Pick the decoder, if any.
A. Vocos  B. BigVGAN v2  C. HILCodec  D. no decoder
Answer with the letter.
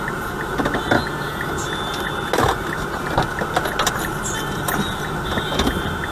D